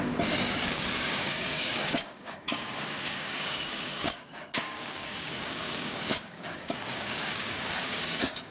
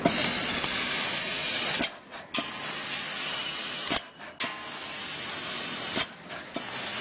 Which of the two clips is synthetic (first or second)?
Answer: first